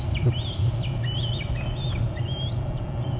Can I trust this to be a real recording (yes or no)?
yes